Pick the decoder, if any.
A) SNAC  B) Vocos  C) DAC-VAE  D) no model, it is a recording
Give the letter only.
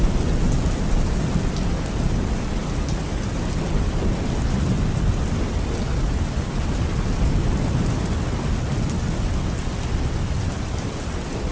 D